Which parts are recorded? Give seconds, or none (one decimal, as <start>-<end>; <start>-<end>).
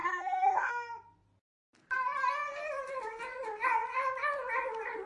0.7-5.1